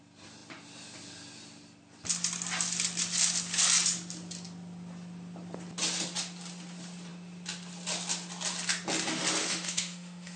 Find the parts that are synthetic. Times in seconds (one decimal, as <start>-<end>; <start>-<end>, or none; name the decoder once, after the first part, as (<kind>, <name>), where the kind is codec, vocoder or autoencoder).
9.4-10.4 (autoencoder, DAC-VAE)